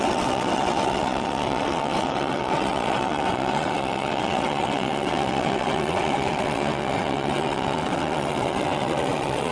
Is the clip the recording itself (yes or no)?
no